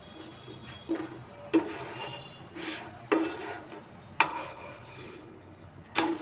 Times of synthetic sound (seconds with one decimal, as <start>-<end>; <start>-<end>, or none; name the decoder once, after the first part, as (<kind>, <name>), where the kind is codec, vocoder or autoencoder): 4.3-5.7 (codec, HILCodec)

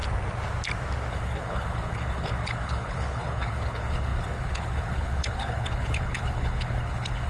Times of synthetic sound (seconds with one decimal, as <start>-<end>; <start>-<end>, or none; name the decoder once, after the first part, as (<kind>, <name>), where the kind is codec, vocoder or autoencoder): 1.1-7.3 (codec, HILCodec)

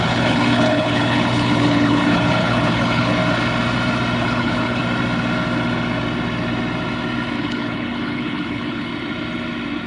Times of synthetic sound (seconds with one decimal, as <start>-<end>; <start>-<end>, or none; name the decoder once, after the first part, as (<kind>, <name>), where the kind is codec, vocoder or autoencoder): 0.0-3.2 (codec, HILCodec); 4.2-4.8; 7.4-8.9

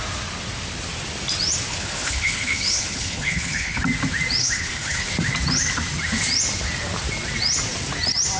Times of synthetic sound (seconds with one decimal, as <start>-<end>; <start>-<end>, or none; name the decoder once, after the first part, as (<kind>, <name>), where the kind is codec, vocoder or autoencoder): 1.7-3.8 (codec, HILCodec); 4.4-5.1

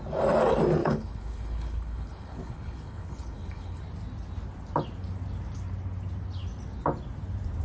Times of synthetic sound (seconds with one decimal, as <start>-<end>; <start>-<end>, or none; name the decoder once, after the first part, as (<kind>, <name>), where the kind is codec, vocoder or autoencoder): 0.8-3.8 (codec, HILCodec)

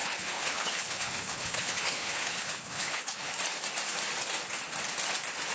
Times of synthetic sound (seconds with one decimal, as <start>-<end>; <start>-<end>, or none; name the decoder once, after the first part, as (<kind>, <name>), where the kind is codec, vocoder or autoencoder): 0.0-3.3 (codec, HILCodec)

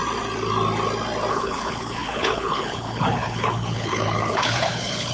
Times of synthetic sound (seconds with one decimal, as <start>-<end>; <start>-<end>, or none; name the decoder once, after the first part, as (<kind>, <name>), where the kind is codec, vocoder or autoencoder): 1.3-5.1 (codec, HILCodec)